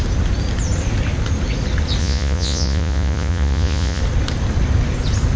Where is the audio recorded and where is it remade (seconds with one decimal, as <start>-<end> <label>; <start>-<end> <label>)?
0.0-2.0 recorded; 2.0-4.0 remade; 4.0-5.4 recorded